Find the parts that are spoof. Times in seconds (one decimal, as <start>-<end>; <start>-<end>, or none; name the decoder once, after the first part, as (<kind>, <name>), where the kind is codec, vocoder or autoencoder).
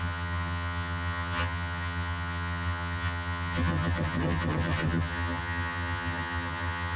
0.0-7.0 (vocoder, HiFi-GAN)